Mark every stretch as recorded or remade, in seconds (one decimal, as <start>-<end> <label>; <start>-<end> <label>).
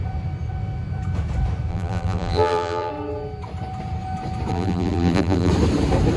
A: 0.0-1.7 recorded; 1.7-2.9 remade; 2.9-4.5 recorded; 4.5-5.5 remade; 5.5-6.2 recorded